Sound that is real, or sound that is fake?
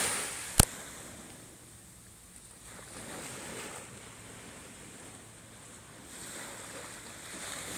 real